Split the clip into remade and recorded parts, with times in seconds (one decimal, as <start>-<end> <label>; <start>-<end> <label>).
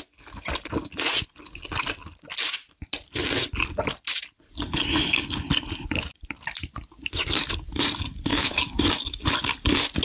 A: 0.0-8.3 recorded; 8.3-8.8 remade; 8.8-10.0 recorded